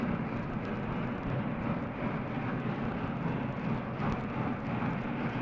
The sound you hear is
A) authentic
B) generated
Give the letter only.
A